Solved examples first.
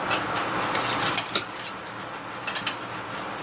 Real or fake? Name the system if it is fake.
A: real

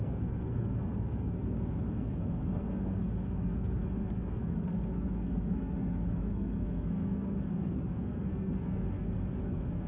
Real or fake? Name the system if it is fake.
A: fake, codec, SNAC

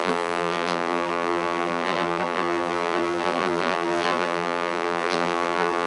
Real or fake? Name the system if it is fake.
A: fake, vocoder, BigVGAN v2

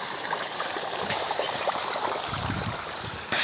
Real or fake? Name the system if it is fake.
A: fake, vocoder, BigVGAN v2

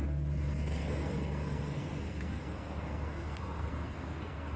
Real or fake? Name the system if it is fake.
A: fake, codec, SNAC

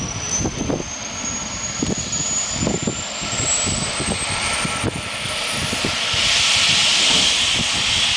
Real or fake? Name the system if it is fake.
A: real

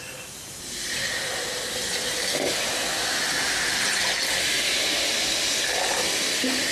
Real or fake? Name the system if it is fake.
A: real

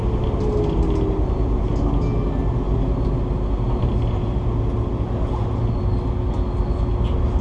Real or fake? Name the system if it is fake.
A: real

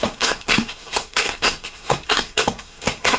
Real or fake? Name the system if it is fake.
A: fake, codec, SNAC